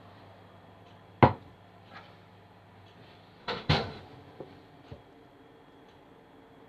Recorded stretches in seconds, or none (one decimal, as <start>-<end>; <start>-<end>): 0.0-3.4; 4.0-6.7

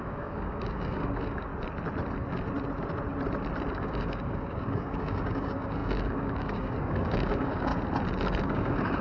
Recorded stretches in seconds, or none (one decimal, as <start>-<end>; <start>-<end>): 1.5-3.7; 7.7-8.4

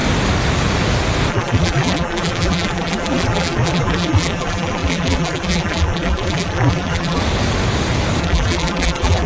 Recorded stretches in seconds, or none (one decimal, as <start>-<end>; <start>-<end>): 0.0-1.3; 7.2-8.2

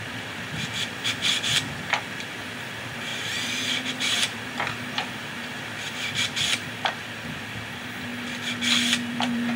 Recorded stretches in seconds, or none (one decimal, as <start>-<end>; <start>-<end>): 3.1-3.9; 8.1-9.1

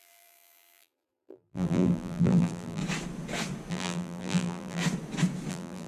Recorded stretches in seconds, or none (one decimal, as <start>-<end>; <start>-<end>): 2.8-3.7; 4.8-5.5